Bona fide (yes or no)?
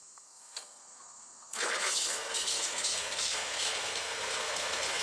no